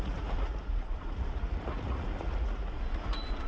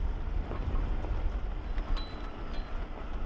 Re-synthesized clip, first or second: first